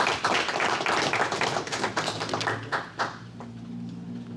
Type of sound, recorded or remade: recorded